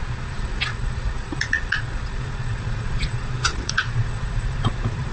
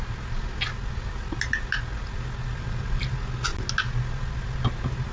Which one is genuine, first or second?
second